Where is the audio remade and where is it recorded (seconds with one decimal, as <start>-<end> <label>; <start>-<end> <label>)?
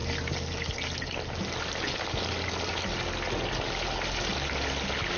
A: 0.0-5.2 recorded